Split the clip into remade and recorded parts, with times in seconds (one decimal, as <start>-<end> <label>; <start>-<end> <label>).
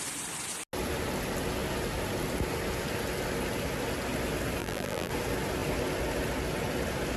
0.0-4.6 recorded; 4.6-5.1 remade; 5.1-7.2 recorded